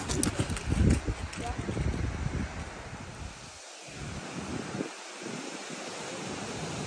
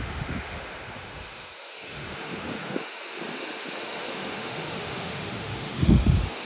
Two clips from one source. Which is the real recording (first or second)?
first